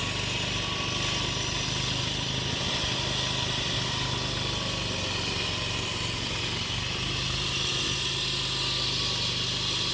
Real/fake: real